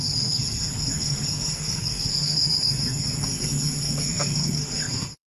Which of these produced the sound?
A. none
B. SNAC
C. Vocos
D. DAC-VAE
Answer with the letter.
B